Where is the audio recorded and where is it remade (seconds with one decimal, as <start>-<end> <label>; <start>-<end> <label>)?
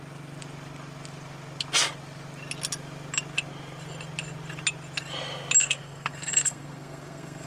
0.0-5.6 recorded; 5.6-7.5 remade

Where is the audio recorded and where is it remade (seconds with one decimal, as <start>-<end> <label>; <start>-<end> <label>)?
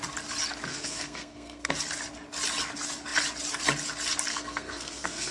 0.0-0.7 recorded; 0.7-1.7 remade; 1.7-4.3 recorded; 4.3-5.3 remade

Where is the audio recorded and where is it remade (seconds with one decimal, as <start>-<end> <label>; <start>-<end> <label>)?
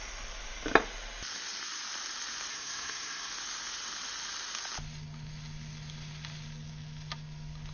0.0-2.5 recorded; 2.5-3.3 remade; 3.3-7.7 recorded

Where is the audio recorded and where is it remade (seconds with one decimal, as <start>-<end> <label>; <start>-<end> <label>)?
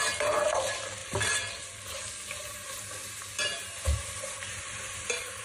0.0-5.4 recorded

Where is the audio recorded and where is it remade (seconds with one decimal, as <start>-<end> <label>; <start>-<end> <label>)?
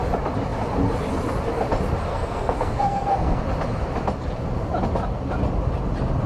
0.0-2.1 recorded; 2.1-3.4 remade; 3.4-6.3 recorded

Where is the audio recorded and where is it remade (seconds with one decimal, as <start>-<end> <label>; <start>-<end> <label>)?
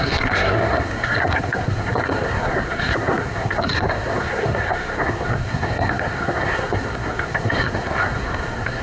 0.0-8.8 remade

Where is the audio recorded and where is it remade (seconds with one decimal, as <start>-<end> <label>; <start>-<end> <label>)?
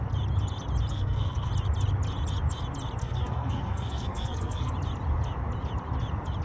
0.0-0.9 recorded; 0.9-1.5 remade; 1.5-3.0 recorded; 3.0-4.7 remade; 4.7-6.4 recorded